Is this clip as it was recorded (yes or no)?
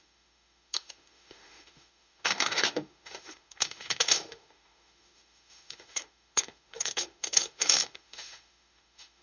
no